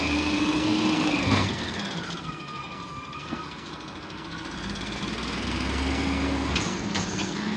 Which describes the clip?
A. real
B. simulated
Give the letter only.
B